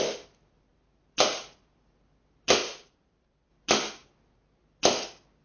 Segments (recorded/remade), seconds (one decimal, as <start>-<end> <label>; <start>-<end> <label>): 0.0-2.6 recorded; 2.6-3.5 remade; 3.5-5.4 recorded